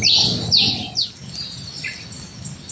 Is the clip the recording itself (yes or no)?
yes